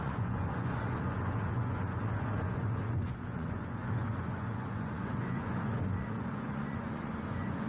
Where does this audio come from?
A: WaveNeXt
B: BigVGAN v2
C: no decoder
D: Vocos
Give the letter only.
D